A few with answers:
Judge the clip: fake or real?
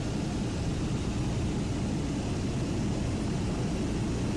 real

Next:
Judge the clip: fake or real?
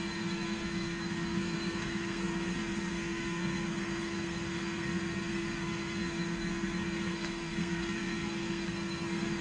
fake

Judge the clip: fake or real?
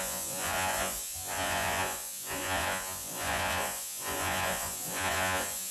fake